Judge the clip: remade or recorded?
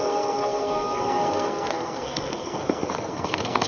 remade